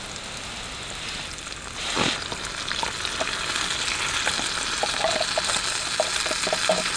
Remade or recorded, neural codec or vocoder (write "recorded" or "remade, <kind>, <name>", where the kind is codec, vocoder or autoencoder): recorded